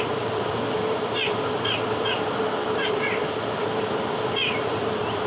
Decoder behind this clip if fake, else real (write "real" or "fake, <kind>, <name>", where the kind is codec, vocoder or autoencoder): fake, vocoder, BigVGAN v2